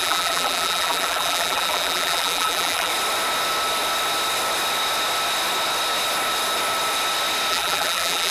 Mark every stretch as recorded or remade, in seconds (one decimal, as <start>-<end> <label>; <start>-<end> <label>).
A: 0.0-2.9 remade; 2.9-7.5 recorded; 7.5-8.3 remade